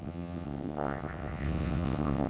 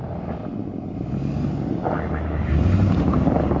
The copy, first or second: first